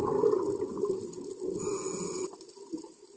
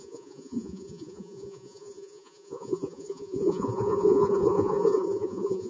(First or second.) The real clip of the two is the first